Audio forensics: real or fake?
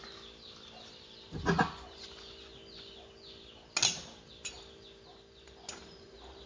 real